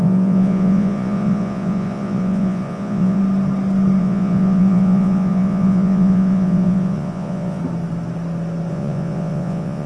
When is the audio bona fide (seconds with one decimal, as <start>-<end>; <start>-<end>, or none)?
3.2-4.0; 7.6-8.7